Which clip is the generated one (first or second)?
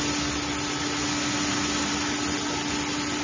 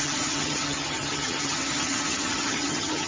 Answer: second